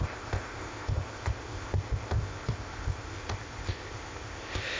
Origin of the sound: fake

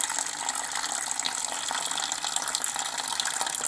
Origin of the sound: real